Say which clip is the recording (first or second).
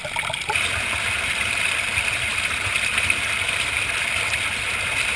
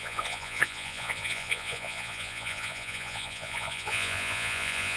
first